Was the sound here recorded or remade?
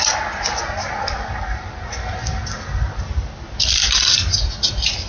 remade